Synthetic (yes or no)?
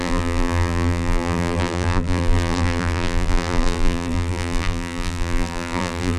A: yes